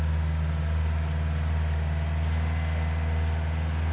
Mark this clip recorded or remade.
recorded